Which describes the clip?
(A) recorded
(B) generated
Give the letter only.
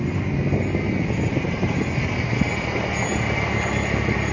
A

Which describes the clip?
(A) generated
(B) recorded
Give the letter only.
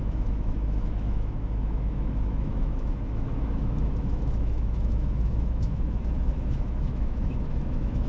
A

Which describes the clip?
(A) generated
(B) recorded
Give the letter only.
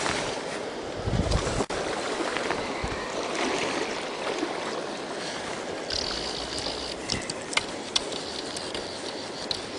B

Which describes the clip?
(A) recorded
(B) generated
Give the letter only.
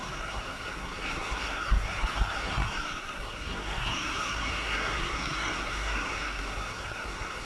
B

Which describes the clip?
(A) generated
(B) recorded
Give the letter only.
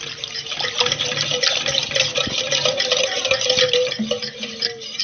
B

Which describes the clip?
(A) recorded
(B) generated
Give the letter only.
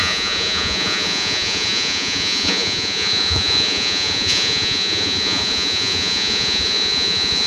B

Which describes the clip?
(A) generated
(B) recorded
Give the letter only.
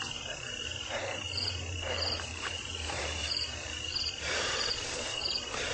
A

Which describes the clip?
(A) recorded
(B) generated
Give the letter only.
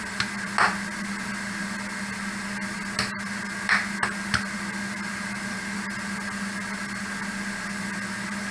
A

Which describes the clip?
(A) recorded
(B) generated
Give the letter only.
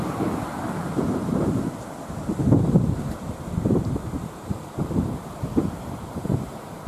A